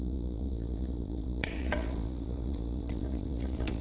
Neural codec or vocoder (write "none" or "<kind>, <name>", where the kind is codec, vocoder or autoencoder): vocoder, Vocos